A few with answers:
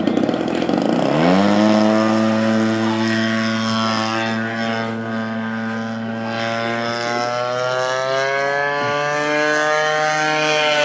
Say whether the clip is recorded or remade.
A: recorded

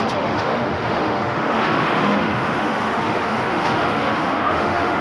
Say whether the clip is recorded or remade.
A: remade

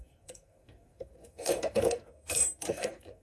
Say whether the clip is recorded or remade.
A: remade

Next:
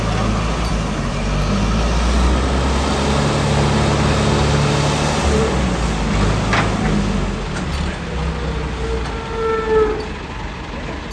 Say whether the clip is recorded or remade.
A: recorded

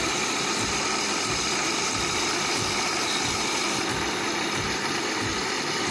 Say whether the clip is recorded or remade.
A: remade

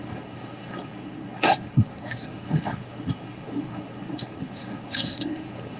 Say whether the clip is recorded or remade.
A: remade